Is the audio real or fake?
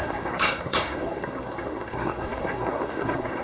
fake